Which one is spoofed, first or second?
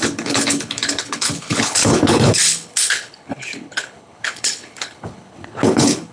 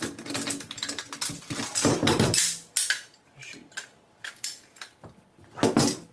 first